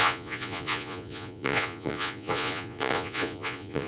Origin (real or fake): fake